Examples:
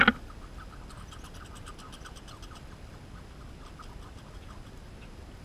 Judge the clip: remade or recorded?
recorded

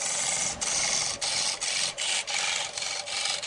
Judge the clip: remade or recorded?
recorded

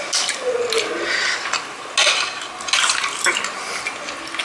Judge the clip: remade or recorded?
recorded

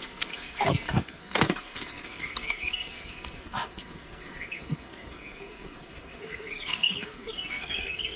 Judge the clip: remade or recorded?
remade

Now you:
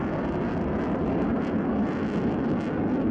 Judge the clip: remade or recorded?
recorded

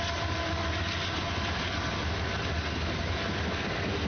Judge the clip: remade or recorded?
recorded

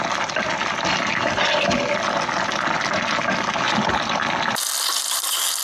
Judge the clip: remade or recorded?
recorded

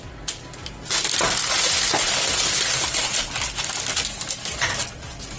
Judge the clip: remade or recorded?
recorded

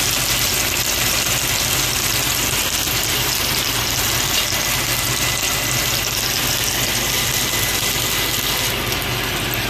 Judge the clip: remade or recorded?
recorded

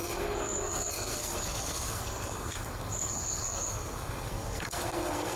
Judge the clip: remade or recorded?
remade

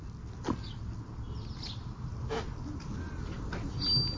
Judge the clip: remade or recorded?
recorded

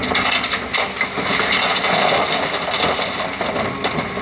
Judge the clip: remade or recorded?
recorded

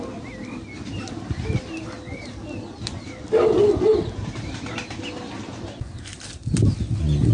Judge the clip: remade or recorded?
recorded